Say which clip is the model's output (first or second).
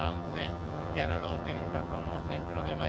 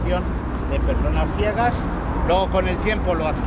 first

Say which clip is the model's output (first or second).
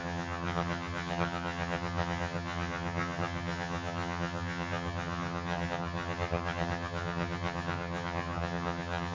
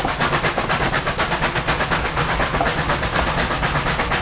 first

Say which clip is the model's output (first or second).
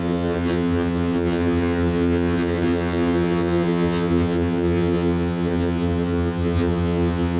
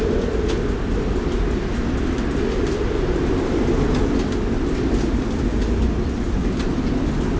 first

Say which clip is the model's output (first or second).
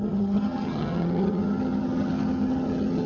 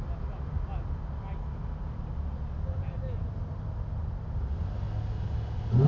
first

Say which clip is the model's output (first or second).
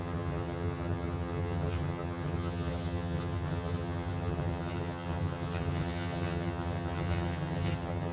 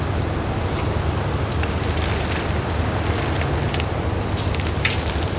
first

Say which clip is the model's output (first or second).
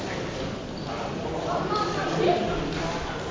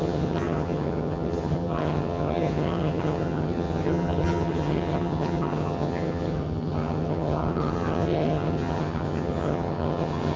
second